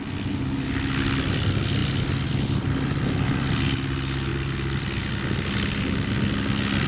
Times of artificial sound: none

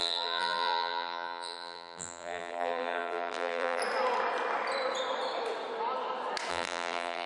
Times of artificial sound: 0.0-3.8 (vocoder, BigVGAN v2); 6.5-7.3

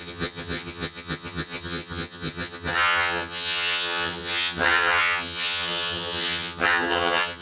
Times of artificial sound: 0.0-7.4 (vocoder, HiFi-GAN)

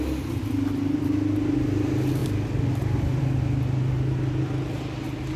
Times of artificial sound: none

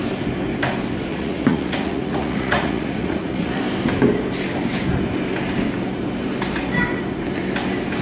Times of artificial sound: 1.1-3.6 (vocoder, Vocos)

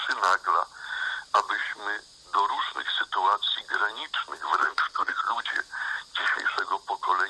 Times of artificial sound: 4.6-5.2 (codec, HILCodec)